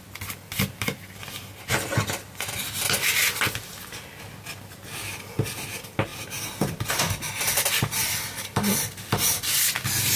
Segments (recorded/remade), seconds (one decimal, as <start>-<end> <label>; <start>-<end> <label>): 0.0-10.2 recorded